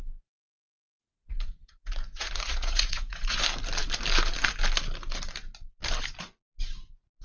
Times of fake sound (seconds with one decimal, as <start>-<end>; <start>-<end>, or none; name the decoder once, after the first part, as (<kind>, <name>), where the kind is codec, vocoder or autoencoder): 1.0-3.4 (vocoder, Vocos)